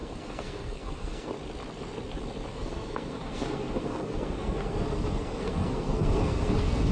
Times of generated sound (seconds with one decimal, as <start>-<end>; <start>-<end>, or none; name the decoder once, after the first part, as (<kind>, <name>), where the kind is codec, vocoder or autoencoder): 0.0-1.3 (codec, SNAC); 2.5-6.9